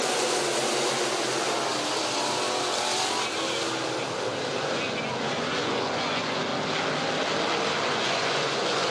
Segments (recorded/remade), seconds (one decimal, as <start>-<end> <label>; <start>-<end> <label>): 0.0-0.5 remade; 0.5-4.6 recorded; 4.6-6.5 remade; 6.5-7.9 recorded; 7.9-8.9 remade